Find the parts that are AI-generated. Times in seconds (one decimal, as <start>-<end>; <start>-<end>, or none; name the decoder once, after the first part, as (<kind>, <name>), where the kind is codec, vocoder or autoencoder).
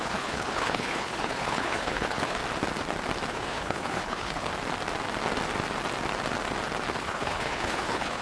0.0-2.4 (codec, HILCodec); 3.3-4.5; 7.0-8.2